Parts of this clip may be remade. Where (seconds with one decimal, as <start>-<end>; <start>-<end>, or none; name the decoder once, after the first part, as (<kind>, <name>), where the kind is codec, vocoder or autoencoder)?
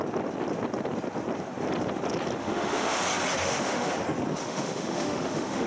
2.4-3.0 (autoencoder, DAC-VAE); 3.4-3.9; 4.4-5.7